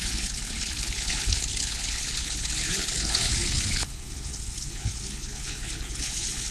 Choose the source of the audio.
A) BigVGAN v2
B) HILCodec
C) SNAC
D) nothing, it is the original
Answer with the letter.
B